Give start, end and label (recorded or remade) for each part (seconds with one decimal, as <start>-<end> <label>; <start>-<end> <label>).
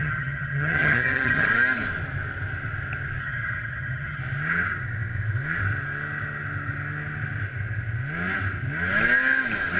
0.0-1.5 remade; 1.5-3.2 recorded; 3.2-4.2 remade; 4.2-9.8 recorded